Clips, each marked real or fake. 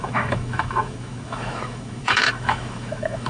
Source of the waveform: fake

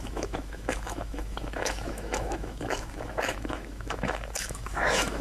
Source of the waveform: fake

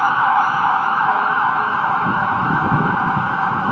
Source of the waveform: fake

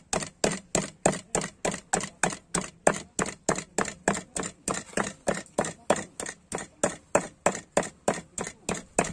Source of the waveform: real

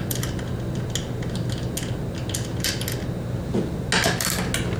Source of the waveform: real